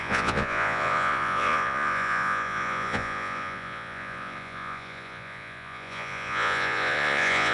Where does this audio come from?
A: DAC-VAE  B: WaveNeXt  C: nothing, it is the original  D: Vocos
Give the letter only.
D